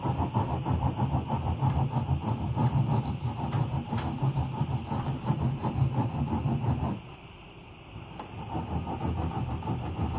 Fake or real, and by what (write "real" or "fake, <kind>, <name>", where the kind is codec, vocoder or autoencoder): real